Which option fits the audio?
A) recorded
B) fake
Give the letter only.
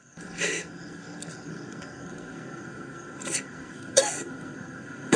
B